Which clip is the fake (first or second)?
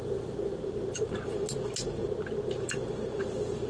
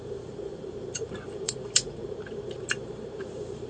second